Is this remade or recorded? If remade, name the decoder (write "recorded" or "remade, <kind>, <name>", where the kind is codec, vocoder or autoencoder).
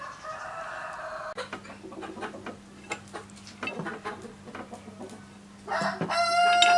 recorded